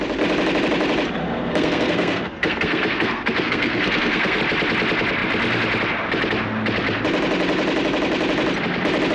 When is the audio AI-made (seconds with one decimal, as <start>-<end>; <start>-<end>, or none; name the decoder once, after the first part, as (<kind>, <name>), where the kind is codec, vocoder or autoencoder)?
1.2-4.4 (codec, SNAC)